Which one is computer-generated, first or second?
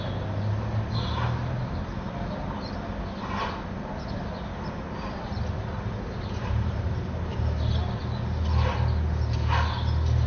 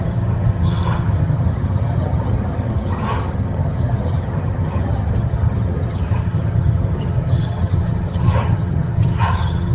second